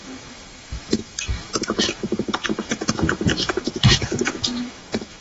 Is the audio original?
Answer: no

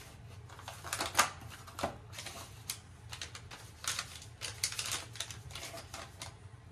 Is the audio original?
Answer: yes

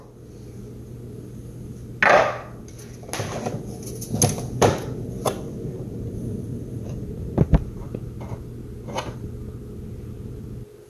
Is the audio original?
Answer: yes